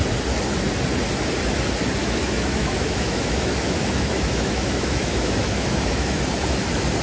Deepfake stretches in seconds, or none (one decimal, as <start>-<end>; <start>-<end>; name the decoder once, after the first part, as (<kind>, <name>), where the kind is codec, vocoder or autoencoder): 2.0-6.2 (autoencoder, DAC-VAE)